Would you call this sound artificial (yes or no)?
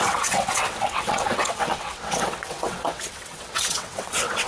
yes